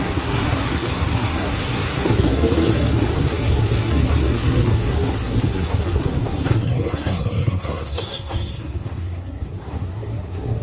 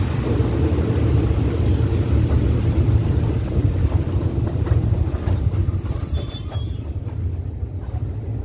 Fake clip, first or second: first